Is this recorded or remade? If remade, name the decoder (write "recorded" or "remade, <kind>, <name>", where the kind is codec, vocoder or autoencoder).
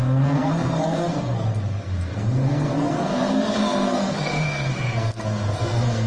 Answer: remade, codec, SNAC